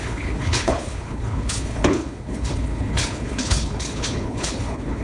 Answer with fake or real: fake